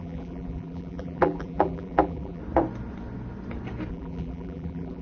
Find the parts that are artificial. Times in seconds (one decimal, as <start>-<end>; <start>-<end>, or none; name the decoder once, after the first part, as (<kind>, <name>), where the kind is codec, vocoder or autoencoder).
0.0-2.4 (vocoder, BigVGAN v2); 3.9-5.0